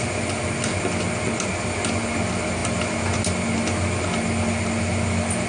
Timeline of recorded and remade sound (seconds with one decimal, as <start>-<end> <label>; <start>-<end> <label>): 0.0-5.5 recorded